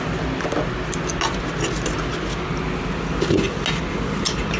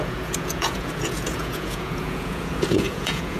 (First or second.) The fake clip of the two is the second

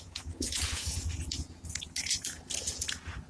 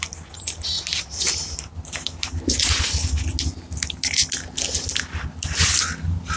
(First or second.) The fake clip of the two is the first